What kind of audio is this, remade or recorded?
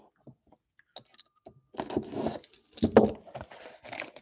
recorded